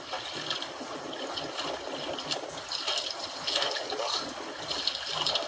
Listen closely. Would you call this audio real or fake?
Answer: real